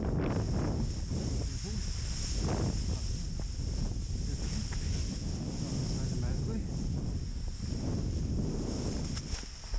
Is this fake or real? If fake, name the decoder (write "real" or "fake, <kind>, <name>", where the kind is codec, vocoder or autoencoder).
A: real